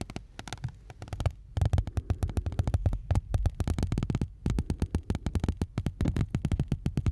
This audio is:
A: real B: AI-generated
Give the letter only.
A